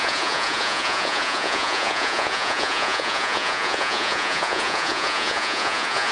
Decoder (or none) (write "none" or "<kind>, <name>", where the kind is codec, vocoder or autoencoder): vocoder, Vocos